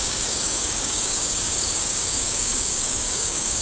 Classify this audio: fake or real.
fake